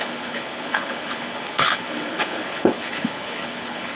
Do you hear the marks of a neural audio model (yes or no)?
yes